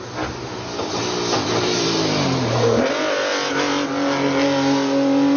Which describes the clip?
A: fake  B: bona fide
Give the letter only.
B